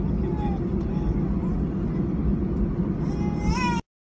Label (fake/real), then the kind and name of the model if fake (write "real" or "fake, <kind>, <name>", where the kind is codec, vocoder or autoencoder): real